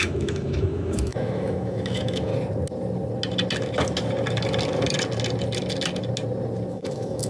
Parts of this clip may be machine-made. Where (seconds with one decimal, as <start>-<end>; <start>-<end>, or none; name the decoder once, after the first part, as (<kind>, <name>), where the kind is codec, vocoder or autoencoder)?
0.0-2.3 (autoencoder, DAC-VAE); 6.7-7.3